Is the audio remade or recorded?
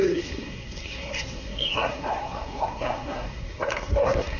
remade